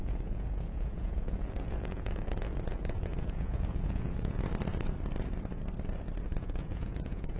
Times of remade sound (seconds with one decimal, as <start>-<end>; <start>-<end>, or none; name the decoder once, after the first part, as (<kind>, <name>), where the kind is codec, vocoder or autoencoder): 0.0-4.4 (vocoder, Vocos); 6.3-7.4